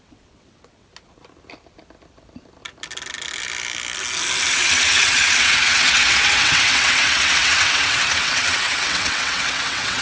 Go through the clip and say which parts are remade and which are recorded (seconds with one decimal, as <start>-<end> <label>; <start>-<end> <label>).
0.0-0.9 remade; 0.9-4.5 recorded; 4.5-10.0 remade